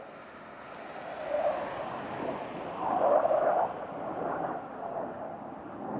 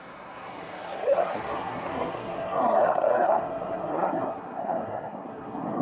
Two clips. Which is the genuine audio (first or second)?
first